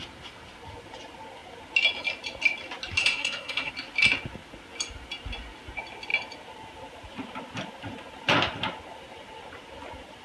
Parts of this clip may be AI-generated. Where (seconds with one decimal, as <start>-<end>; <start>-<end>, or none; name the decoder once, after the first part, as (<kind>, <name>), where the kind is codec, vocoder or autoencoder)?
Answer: 3.0-3.7 (codec, SNAC)